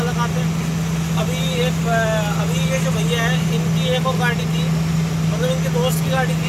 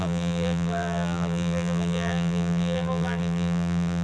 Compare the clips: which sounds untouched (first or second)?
first